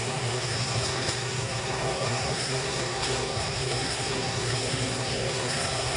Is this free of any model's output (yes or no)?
no